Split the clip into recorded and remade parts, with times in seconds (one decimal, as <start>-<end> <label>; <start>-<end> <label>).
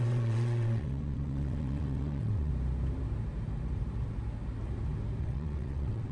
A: 0.0-2.5 remade; 2.5-5.2 recorded; 5.2-6.1 remade